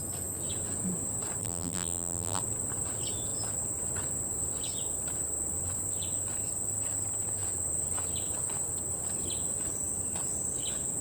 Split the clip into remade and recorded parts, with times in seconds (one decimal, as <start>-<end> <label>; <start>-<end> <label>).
0.0-1.4 recorded; 1.4-2.4 remade; 2.4-11.0 recorded